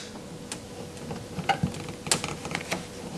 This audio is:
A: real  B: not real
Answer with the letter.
A